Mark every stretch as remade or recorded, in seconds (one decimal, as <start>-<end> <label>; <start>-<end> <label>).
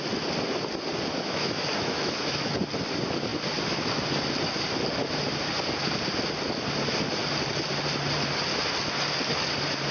0.0-1.1 recorded; 1.1-2.6 remade; 2.6-9.9 recorded